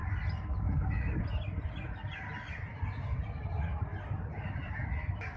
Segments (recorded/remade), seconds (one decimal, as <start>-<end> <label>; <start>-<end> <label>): 0.0-5.4 recorded